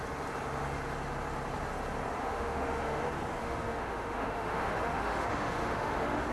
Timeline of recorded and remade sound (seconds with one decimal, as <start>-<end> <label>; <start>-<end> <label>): 0.0-2.2 recorded; 2.2-3.0 remade; 3.0-3.4 recorded; 3.4-6.3 remade